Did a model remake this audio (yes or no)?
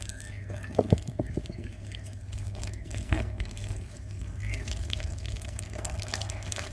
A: yes